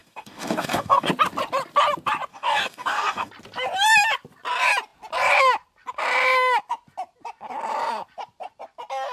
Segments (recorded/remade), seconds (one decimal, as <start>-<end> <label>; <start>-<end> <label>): 0.0-1.1 remade; 1.1-2.3 recorded; 2.3-3.3 remade; 3.3-9.1 recorded